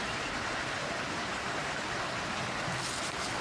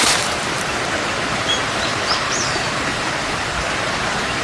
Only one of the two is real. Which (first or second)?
first